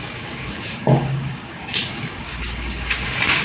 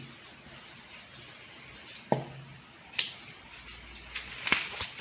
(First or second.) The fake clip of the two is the first